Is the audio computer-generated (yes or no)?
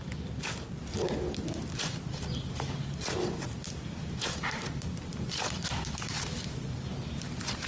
no